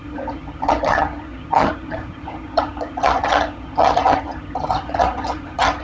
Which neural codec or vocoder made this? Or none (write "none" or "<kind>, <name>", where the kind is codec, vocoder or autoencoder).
vocoder, HiFi-GAN